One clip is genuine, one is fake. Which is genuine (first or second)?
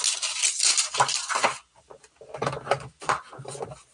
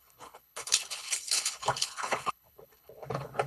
first